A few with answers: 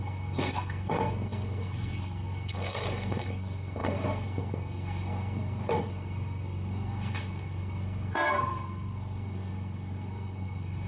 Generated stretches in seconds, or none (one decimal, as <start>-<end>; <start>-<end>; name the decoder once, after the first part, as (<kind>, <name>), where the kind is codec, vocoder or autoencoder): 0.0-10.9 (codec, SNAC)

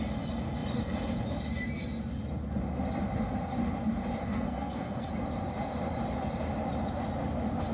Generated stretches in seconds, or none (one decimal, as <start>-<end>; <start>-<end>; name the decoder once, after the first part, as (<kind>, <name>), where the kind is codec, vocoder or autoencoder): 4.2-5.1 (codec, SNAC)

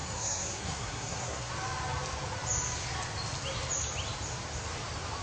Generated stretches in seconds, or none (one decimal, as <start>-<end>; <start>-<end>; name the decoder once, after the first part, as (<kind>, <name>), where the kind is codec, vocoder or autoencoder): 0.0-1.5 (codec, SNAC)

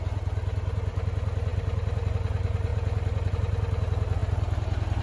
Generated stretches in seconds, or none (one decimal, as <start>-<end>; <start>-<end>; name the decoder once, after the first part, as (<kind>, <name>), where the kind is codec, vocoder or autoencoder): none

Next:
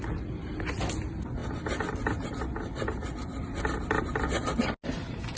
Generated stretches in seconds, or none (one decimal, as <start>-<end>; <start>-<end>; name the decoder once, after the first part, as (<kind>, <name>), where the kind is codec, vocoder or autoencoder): none

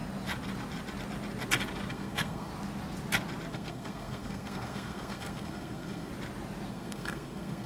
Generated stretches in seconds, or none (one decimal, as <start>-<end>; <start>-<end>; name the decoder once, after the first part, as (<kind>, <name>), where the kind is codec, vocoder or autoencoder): 1.9-2.5 (codec, SNAC); 3.5-6.1; 6.7-7.7

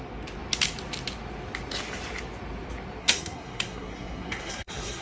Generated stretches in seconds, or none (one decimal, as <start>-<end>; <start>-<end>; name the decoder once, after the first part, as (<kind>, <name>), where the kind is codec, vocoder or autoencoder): 3.0-5.0 (codec, SNAC)

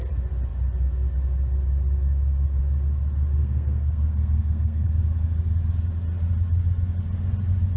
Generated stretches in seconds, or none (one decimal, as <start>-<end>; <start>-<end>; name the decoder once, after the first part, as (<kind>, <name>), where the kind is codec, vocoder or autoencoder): 3.4-4.9 (codec, SNAC)